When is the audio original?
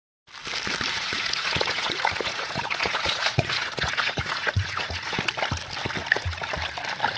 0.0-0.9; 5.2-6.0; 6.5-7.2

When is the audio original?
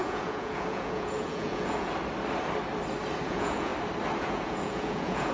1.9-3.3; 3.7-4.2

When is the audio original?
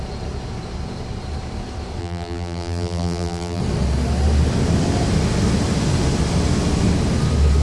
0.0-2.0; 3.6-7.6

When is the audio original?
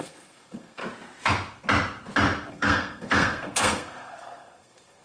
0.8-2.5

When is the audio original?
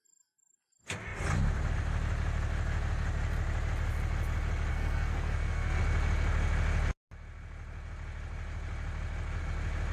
0.0-4.7; 5.8-9.9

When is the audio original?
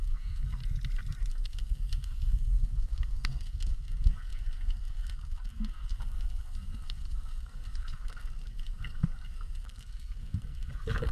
0.6-1.3